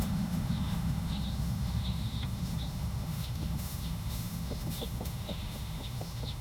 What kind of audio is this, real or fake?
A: fake